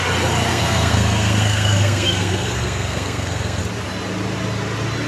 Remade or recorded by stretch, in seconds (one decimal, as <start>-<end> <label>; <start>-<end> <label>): 0.0-0.5 recorded; 0.5-3.6 remade; 3.6-5.1 recorded